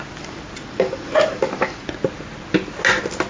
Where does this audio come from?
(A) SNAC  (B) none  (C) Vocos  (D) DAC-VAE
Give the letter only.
B